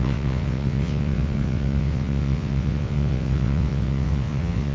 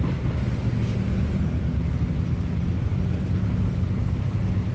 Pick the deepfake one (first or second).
first